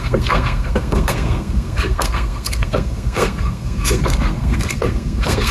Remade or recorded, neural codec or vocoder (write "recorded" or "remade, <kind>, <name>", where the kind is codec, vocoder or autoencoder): remade, codec, SNAC